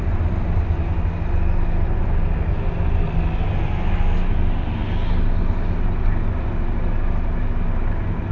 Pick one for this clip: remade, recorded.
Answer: recorded